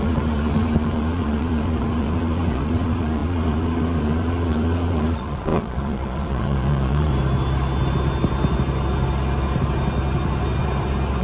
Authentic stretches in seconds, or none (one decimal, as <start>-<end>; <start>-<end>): 7.1-11.2